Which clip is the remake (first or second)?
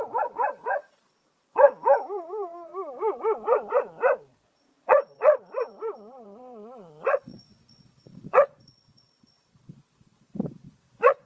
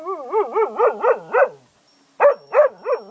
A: first